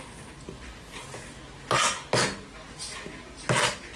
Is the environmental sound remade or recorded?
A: recorded